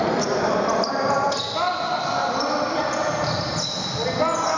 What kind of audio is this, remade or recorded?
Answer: recorded